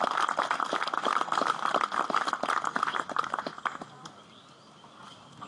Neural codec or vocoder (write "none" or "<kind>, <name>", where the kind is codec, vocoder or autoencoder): none